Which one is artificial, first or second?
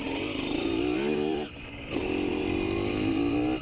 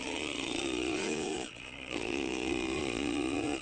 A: second